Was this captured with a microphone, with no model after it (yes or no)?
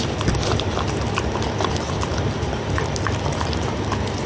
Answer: yes